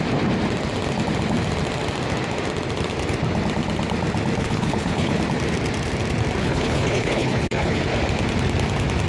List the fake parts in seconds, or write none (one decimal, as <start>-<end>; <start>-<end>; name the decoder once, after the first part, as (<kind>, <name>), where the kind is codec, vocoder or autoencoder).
4.4-5.2 (codec, HILCodec); 6.4-7.8